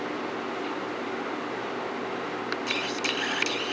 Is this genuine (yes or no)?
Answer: yes